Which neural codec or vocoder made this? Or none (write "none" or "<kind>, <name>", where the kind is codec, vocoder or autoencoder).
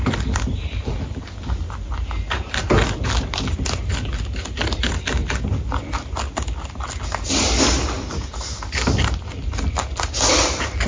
none